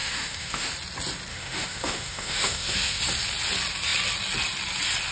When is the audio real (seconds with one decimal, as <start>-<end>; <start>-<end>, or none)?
0.7-1.3; 3.0-5.1